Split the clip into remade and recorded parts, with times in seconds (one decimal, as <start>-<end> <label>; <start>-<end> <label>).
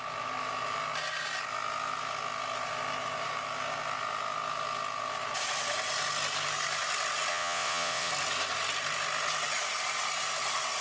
0.0-7.3 recorded; 7.3-8.1 remade; 8.1-10.8 recorded